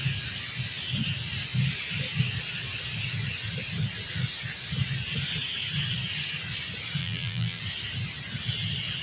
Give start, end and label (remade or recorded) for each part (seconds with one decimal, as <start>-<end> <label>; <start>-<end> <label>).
0.0-7.0 recorded; 7.0-7.6 remade; 7.6-9.0 recorded